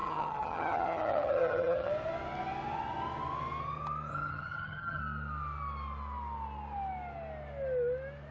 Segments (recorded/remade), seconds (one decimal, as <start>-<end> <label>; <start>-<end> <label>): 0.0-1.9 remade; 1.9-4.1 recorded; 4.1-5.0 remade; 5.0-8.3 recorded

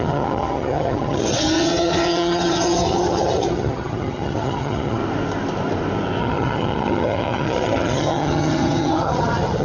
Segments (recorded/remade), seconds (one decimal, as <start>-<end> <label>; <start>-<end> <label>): 0.0-5.0 remade; 5.0-6.2 recorded; 6.2-9.6 remade

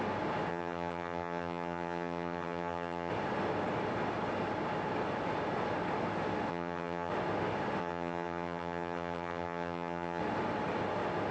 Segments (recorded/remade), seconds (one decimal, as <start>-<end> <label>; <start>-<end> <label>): 0.0-0.5 recorded; 0.5-3.1 remade; 3.1-6.5 recorded; 6.5-7.1 remade; 7.1-7.8 recorded; 7.8-10.2 remade; 10.2-11.3 recorded

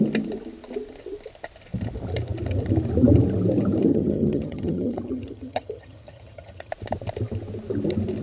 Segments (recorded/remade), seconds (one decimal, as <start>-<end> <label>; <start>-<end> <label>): 0.0-3.9 recorded; 3.9-6.7 remade; 6.7-8.2 recorded

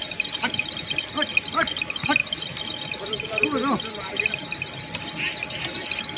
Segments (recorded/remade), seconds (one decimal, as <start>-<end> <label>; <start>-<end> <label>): 0.0-6.2 recorded

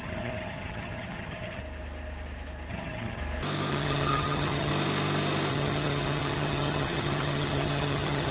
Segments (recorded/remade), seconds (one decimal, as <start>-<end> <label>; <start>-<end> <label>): 0.0-1.6 remade; 1.6-2.7 recorded; 2.7-3.2 remade; 3.2-3.7 recorded; 3.7-4.7 remade; 4.7-5.5 recorded; 5.5-8.3 remade